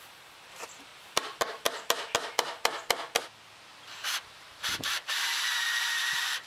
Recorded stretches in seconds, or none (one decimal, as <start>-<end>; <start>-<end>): 0.9-3.5